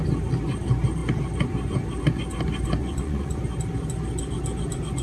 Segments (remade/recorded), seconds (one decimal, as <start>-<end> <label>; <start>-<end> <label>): 0.0-2.8 recorded; 2.8-3.4 remade; 3.4-5.0 recorded